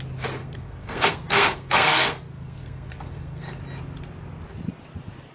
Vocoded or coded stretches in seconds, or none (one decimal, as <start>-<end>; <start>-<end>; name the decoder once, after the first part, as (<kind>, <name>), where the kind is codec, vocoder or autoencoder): 0.4-3.6 (codec, SNAC)